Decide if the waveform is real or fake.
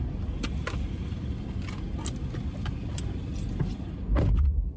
real